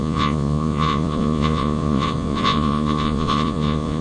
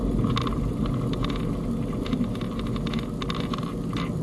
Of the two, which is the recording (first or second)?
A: second